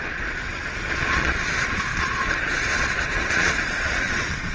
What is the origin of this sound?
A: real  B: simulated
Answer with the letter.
B